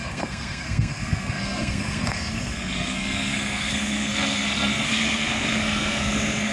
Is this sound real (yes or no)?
no